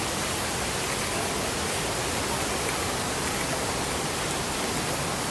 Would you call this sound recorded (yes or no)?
yes